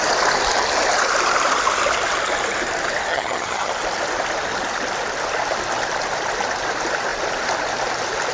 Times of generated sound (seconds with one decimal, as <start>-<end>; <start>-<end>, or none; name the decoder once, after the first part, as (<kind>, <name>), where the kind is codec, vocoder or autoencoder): 3.1-3.7 (vocoder, HiFi-GAN)